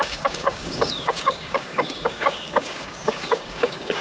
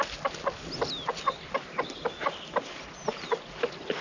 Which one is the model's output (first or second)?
first